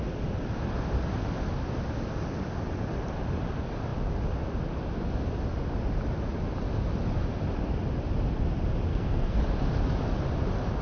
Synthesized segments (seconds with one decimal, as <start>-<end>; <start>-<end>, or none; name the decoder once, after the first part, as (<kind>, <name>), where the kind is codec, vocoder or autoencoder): 8.9-9.4 (codec, SNAC)